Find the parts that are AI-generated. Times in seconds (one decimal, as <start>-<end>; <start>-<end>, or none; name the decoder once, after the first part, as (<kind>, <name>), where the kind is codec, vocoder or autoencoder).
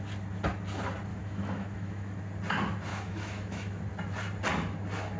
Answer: 1.1-2.2 (autoencoder, DAC-VAE); 2.9-3.8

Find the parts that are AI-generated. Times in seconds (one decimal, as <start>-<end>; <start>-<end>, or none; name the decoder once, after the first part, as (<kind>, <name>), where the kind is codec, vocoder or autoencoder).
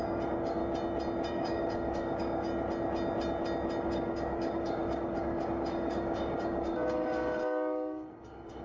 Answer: 0.0-0.6 (codec, DAC); 1.3-2.5; 3.8-8.6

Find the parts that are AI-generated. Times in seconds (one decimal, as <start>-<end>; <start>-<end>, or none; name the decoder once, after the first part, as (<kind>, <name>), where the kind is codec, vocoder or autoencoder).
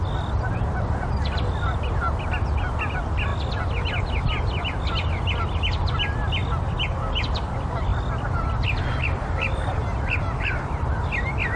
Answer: none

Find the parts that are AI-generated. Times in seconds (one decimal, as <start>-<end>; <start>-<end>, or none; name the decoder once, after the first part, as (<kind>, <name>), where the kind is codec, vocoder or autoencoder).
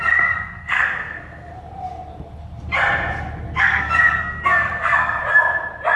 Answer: 0.0-1.5 (codec, SNAC); 3.6-5.2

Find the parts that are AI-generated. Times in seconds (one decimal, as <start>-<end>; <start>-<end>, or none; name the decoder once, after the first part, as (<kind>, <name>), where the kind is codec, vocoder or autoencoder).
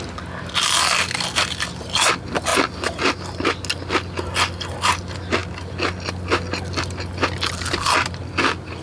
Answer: none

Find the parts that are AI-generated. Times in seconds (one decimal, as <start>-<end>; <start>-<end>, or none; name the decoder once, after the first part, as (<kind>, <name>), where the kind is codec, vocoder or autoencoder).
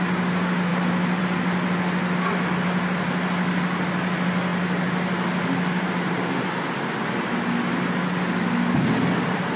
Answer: none